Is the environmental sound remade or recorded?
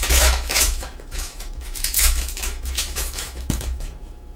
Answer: remade